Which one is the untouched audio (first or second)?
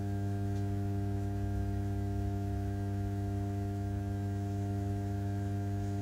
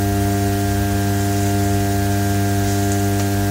second